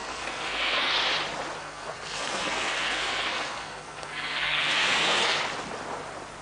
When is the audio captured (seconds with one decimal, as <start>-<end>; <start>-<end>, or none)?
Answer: 0.9-1.6; 5.4-6.4